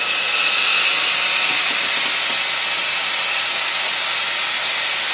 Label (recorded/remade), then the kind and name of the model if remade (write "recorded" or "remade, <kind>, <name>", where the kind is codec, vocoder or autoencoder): recorded